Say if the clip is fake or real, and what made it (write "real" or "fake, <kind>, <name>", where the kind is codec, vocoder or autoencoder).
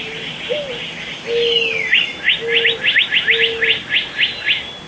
real